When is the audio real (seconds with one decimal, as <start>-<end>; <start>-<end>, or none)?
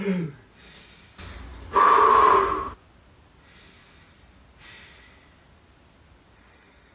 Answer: 0.0-6.9